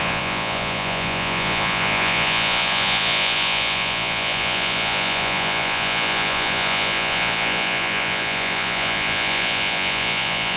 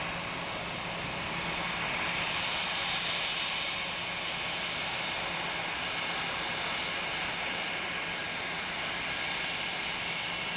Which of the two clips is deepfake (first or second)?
first